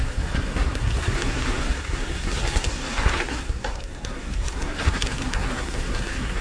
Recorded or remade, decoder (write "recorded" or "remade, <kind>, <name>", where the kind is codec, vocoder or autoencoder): remade, codec, SNAC